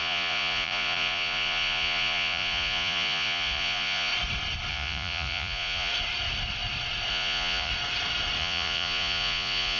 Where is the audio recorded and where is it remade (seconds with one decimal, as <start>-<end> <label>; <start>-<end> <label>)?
0.0-4.1 remade; 4.1-4.7 recorded; 4.7-5.9 remade; 5.9-7.1 recorded; 7.1-7.7 remade; 7.7-8.4 recorded; 8.4-9.8 remade